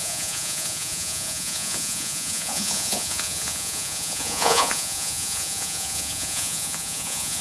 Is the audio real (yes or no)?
no